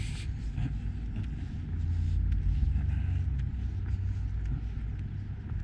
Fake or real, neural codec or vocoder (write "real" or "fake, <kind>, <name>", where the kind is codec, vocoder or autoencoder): real